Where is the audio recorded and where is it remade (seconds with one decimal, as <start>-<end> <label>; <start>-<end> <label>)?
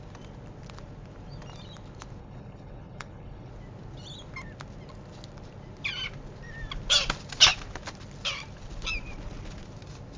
0.0-2.2 recorded; 2.2-3.5 remade; 3.5-10.2 recorded